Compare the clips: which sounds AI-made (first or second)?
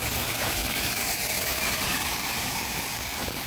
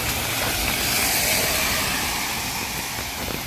first